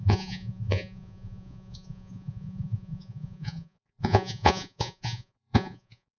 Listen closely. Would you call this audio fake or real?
fake